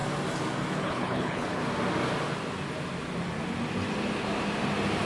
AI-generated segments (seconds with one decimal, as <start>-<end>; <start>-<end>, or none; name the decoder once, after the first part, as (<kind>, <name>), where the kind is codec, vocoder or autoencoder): 0.7-1.6 (codec, HILCodec)